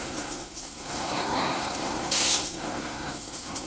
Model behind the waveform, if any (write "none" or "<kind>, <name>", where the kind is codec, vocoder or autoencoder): codec, SNAC